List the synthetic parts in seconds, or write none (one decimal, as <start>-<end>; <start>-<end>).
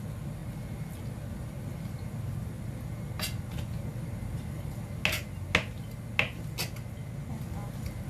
none